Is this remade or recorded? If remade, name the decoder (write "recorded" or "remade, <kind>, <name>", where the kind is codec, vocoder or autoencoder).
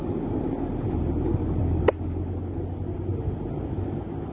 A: recorded